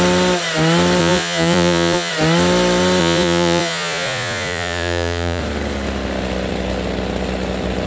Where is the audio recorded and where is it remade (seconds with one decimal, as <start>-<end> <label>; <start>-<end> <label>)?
0.0-1.0 recorded; 1.0-2.1 remade; 2.1-3.0 recorded; 3.0-5.4 remade; 5.4-7.9 recorded